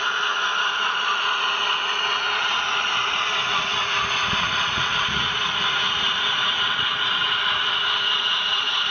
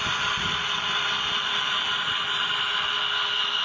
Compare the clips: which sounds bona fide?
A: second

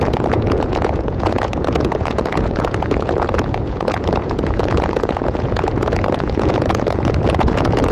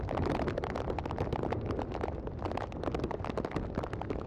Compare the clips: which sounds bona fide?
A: second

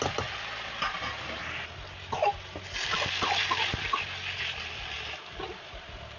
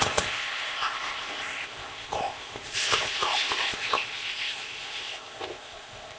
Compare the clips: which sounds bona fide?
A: first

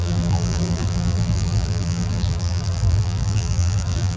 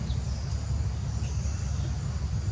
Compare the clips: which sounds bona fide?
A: second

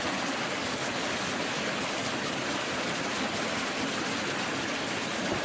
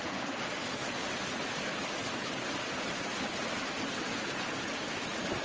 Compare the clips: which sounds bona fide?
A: first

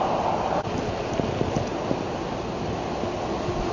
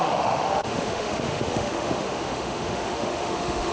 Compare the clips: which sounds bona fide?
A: first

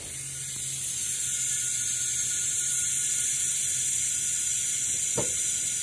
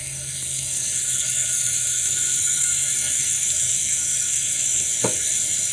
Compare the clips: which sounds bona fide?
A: first